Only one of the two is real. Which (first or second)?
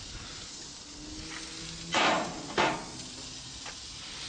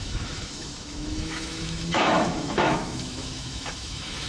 first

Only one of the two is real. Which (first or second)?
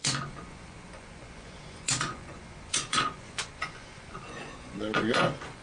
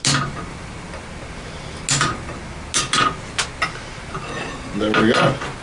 second